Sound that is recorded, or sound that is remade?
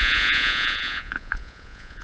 remade